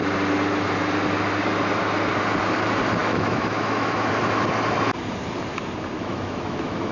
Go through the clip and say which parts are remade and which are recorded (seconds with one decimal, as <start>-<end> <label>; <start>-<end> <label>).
0.0-3.0 recorded; 3.0-4.1 remade; 4.1-6.0 recorded; 6.0-6.9 remade